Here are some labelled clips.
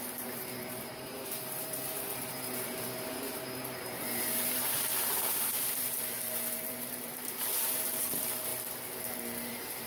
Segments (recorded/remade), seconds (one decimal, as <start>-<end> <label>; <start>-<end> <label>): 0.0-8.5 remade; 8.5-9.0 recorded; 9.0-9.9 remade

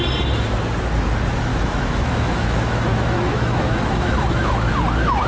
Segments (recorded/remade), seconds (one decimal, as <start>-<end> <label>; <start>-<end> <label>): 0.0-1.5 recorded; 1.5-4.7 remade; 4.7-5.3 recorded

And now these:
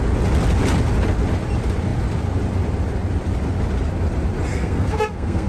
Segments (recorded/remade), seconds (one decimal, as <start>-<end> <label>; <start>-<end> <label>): 0.0-4.5 recorded; 4.5-5.5 remade